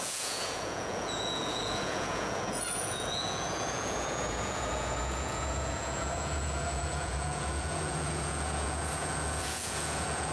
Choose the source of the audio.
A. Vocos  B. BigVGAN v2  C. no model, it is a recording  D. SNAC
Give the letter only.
A